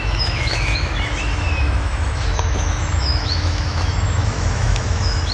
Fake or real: fake